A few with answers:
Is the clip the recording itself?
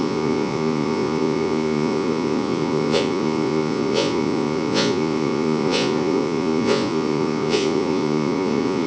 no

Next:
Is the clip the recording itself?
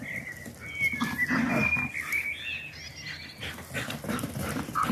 yes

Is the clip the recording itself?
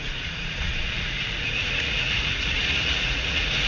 no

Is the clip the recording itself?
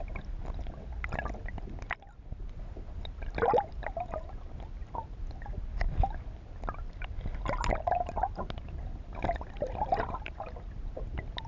yes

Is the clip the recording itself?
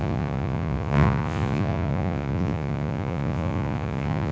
no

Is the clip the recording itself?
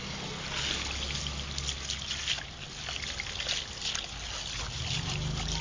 yes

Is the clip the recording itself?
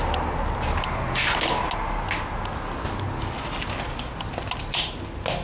yes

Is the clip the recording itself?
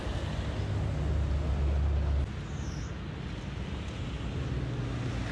yes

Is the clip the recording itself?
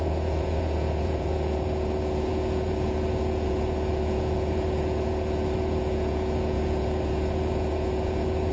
no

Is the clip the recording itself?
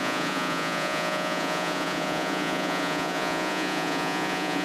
no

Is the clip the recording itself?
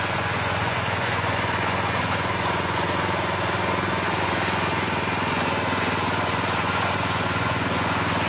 no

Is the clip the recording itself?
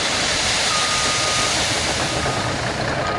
yes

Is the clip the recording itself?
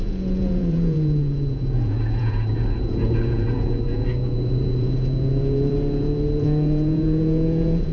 no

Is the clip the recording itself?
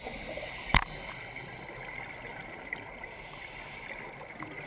yes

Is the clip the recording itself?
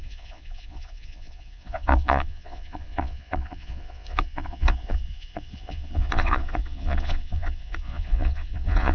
no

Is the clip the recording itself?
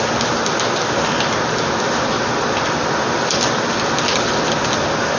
yes